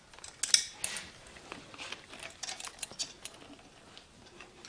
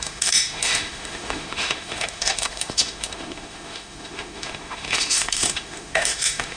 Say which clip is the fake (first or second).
second